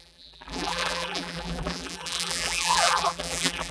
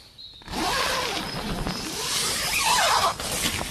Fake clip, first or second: first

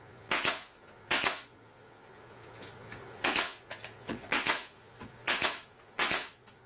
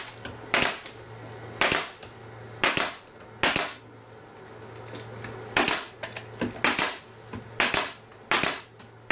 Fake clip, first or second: first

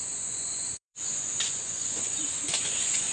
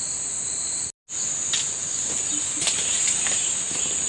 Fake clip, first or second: first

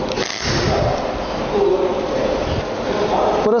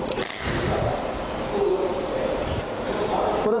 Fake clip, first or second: second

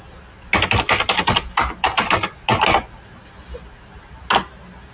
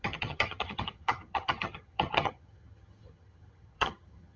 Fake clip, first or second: second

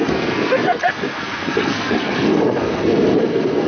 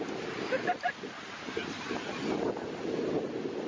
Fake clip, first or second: first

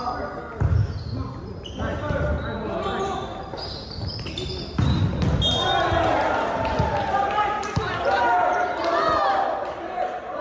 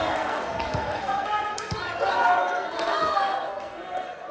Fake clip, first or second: second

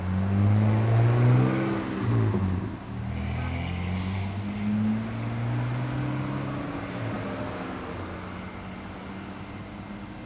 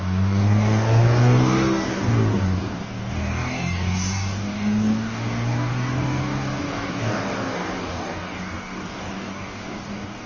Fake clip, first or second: second